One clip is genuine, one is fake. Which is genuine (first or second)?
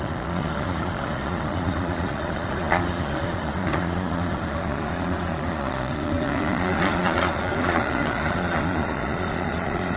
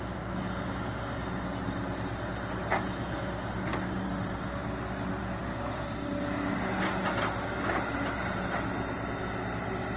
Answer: second